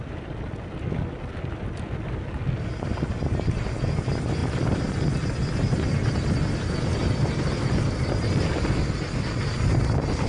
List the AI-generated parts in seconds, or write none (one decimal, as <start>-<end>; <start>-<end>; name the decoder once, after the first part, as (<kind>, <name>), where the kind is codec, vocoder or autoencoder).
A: none